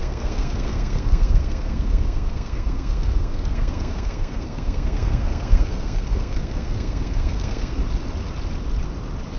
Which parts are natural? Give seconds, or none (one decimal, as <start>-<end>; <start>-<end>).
7.8-9.4